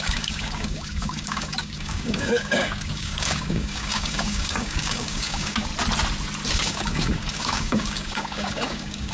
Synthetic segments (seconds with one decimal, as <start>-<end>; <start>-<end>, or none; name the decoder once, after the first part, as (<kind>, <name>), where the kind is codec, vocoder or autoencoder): 0.0-5.7 (codec, DAC); 6.5-9.1